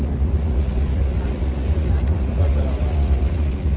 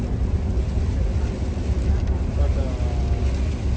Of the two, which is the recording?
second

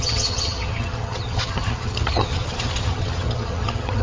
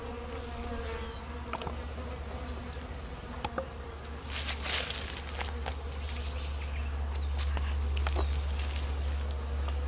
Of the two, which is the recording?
second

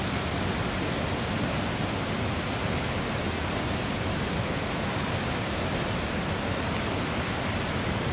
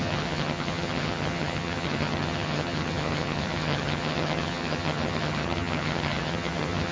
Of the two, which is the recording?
first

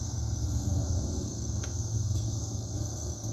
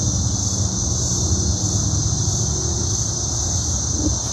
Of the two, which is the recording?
second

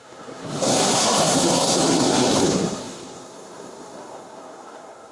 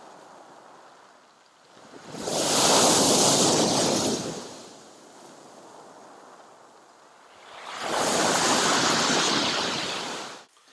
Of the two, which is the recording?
second